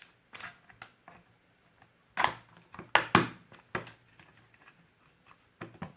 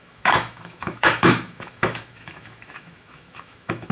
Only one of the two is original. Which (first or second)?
first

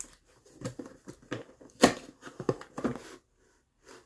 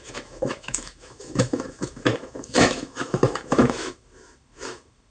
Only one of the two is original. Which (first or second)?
first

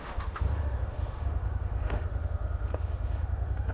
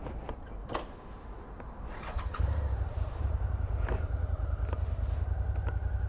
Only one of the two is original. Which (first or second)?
second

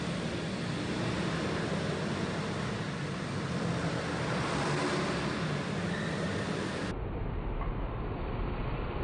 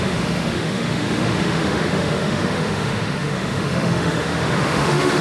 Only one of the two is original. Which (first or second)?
first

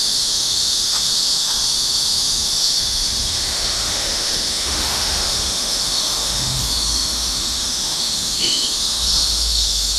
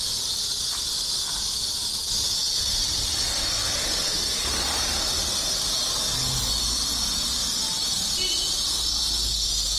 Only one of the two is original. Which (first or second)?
second